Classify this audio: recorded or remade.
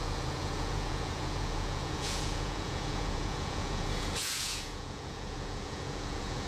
remade